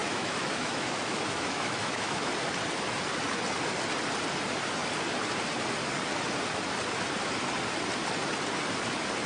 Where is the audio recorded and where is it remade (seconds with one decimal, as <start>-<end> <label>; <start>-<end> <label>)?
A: 0.0-2.3 remade; 2.3-9.3 recorded